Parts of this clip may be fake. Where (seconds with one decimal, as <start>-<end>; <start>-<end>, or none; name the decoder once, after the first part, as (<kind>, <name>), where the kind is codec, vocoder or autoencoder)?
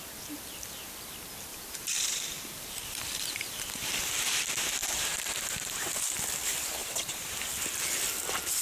1.5-4.0 (vocoder, BigVGAN v2); 4.8-6.0; 6.8-7.3